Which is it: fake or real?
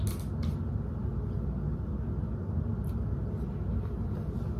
real